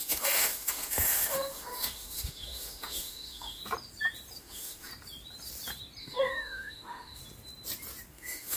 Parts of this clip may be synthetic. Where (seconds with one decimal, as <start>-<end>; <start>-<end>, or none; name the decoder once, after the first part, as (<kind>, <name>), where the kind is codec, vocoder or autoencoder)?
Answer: 0.0-3.6 (autoencoder, DAC-VAE); 4.4-4.9; 6.0-7.2; 8.1-8.6